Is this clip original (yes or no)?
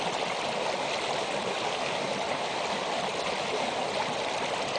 yes